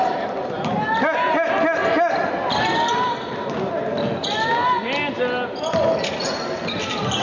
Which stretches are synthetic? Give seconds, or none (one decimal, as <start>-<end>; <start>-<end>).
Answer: none